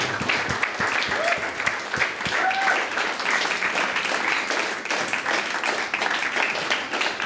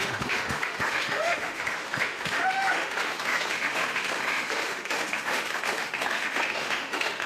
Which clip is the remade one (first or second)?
second